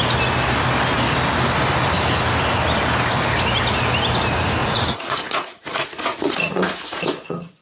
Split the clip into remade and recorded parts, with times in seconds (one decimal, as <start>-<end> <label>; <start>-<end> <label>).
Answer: 0.0-4.6 recorded; 4.6-7.6 remade